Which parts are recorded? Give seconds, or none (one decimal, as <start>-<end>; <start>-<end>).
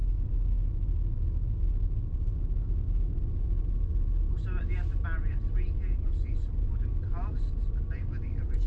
0.0-8.7